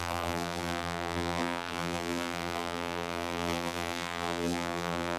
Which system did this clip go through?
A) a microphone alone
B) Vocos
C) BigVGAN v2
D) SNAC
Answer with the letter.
C